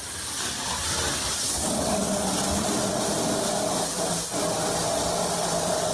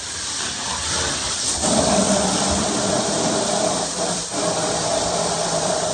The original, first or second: first